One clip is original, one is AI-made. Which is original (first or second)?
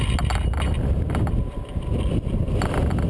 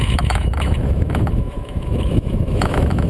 first